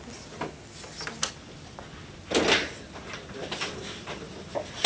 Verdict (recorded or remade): recorded